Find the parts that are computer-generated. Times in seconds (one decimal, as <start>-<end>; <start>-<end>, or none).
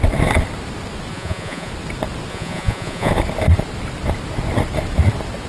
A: 1.1-1.7; 2.3-3.1